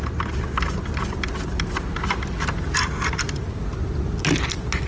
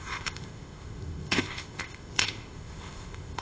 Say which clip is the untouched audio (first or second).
first